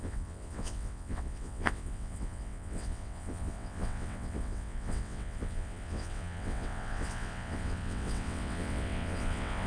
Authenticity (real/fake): fake